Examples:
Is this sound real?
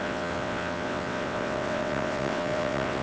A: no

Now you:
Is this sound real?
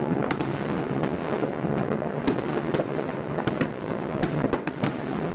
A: no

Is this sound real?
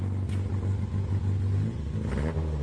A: yes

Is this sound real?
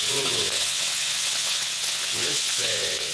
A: no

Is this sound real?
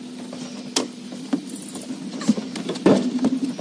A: yes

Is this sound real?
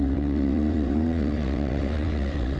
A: no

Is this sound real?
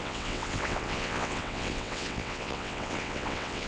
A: no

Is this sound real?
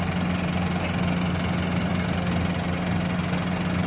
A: yes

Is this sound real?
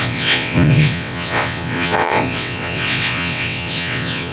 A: no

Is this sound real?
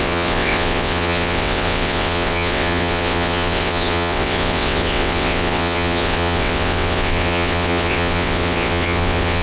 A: no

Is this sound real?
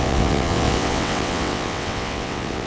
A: no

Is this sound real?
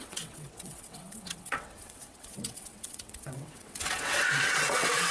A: no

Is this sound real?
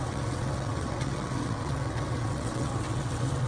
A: no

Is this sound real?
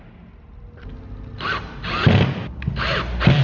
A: yes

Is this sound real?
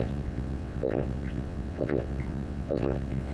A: no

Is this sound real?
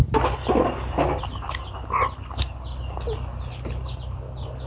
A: yes